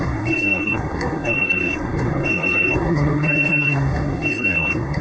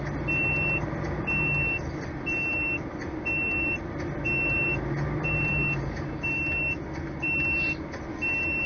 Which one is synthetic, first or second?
first